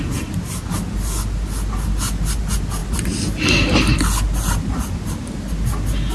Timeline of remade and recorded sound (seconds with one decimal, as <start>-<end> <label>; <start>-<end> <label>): 0.0-6.1 recorded

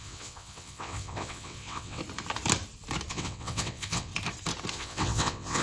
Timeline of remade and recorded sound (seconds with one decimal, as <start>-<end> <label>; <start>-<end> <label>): 0.0-2.0 remade; 2.0-3.1 recorded; 3.1-4.1 remade; 4.1-4.7 recorded; 4.7-5.6 remade

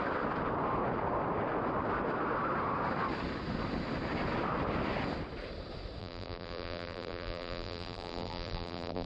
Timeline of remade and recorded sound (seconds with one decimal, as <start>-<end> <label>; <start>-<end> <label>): 0.0-6.0 recorded; 6.0-9.1 remade

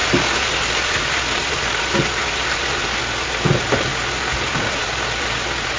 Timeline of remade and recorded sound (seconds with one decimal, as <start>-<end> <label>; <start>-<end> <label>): 0.0-5.8 recorded

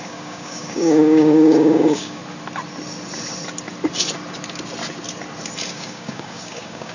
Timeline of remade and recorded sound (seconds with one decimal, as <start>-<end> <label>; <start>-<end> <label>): 0.0-2.2 remade; 2.2-5.7 recorded; 5.7-6.9 remade

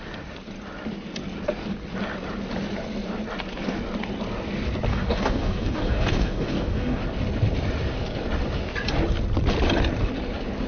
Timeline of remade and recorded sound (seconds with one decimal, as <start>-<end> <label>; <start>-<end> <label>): 0.0-4.9 recorded; 4.9-7.0 remade; 7.0-10.7 recorded